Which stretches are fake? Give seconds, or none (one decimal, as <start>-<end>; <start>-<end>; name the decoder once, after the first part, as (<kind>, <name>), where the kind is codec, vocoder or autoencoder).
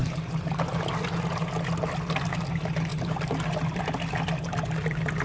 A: 0.0-0.9 (vocoder, BigVGAN v2); 2.9-3.8